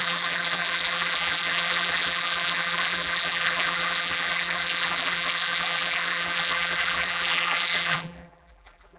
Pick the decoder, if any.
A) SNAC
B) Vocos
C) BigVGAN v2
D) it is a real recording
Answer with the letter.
C